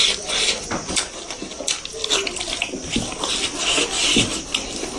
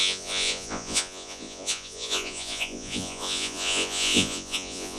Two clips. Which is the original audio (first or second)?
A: first